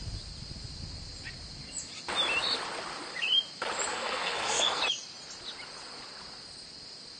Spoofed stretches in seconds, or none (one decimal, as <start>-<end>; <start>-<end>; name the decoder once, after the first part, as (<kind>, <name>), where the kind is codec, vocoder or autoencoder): 3.9-4.8 (codec, SNAC)

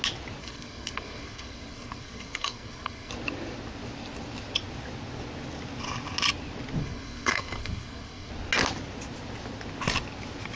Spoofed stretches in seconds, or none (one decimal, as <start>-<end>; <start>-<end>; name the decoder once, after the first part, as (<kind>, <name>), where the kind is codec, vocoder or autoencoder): 0.4-3.1 (codec, SNAC); 6.8-8.3